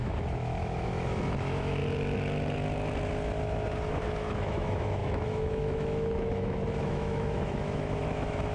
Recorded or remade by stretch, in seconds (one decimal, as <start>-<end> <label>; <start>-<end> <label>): 0.0-1.8 remade; 1.8-3.9 recorded; 3.9-8.5 remade